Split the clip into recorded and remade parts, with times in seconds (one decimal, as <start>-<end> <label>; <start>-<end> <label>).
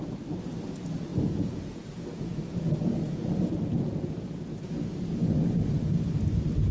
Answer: 0.0-1.1 recorded; 1.1-4.0 remade; 4.0-6.7 recorded